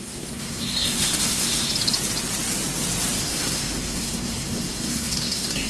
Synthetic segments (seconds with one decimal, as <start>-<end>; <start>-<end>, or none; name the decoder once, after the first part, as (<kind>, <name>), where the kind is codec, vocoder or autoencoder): 0.0-1.7 (codec, SNAC); 3.2-5.7